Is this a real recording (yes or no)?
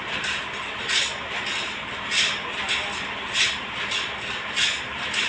yes